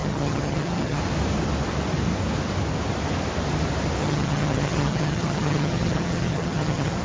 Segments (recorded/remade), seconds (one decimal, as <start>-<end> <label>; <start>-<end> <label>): 0.0-1.0 remade; 1.0-4.0 recorded; 4.0-7.0 remade